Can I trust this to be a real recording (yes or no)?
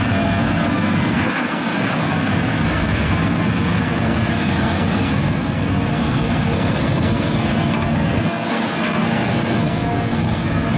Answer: no